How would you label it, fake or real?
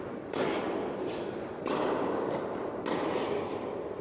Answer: real